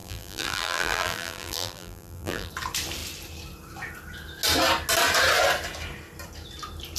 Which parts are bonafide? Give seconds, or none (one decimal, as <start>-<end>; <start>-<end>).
2.5-7.0